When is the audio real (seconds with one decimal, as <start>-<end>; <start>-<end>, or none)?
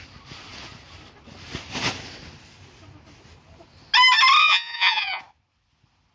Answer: 0.0-4.4; 5.2-6.1